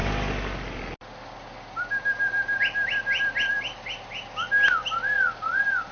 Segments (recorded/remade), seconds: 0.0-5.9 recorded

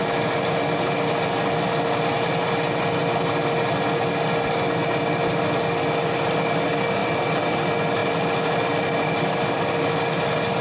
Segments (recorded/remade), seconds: 0.0-7.0 recorded; 7.0-7.6 remade; 7.6-10.6 recorded

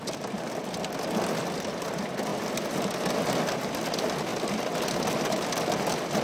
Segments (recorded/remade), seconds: 0.0-2.3 recorded; 2.3-3.1 remade; 3.1-6.2 recorded

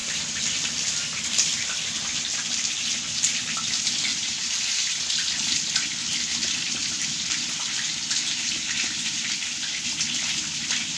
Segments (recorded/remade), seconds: 0.0-4.1 recorded; 4.1-5.0 remade; 5.0-6.8 recorded; 6.8-9.2 remade; 9.2-11.0 recorded

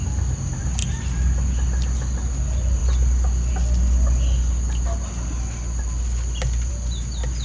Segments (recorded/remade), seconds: 0.0-7.4 recorded

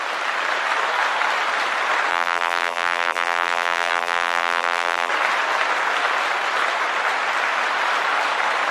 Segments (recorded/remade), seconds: 0.0-2.1 recorded; 2.1-5.1 remade; 5.1-8.7 recorded

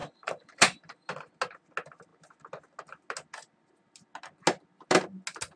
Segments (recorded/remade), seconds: 0.0-1.1 remade; 1.1-5.6 recorded

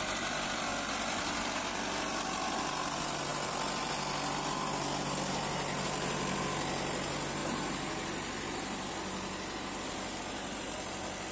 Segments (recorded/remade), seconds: 0.0-0.7 recorded; 0.7-1.6 remade; 1.6-3.3 recorded; 3.3-3.9 remade; 3.9-11.3 recorded